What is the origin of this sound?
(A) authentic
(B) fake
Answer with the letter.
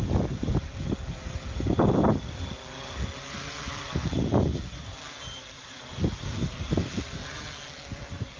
A